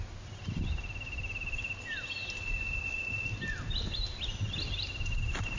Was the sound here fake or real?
real